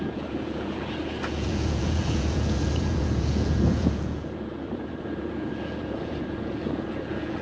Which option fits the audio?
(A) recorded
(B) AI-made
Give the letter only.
B